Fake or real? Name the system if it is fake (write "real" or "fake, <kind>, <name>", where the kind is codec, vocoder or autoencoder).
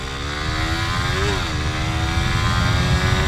real